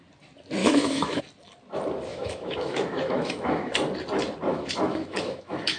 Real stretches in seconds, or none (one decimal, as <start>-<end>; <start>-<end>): 0.0-0.6; 1.2-2.1; 3.7-4.5